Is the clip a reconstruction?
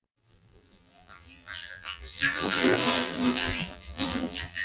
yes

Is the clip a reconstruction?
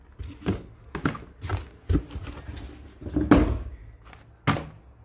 no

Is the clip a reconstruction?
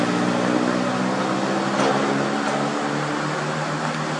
no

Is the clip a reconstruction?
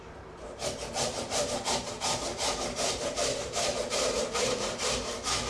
yes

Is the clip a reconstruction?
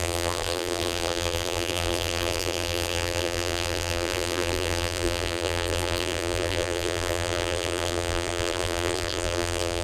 yes